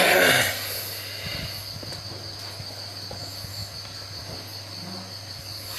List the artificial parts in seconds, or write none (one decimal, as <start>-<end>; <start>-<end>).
none